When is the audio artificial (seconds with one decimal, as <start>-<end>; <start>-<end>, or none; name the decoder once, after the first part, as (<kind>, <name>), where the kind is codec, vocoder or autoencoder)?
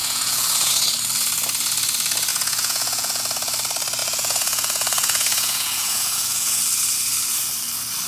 0.0-0.7 (vocoder, Vocos); 2.3-3.2; 4.0-6.6